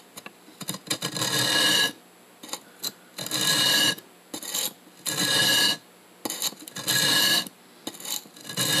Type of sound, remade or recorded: recorded